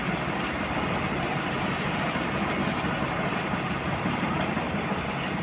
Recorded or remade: recorded